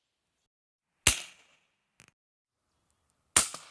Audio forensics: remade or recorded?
recorded